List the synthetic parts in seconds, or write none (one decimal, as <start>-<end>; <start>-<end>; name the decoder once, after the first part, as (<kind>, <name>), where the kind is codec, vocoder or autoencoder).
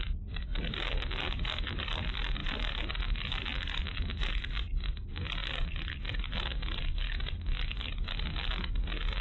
none